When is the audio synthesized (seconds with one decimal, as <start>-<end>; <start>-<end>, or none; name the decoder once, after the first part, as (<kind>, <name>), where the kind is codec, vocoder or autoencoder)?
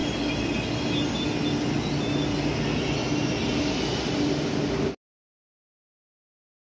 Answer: none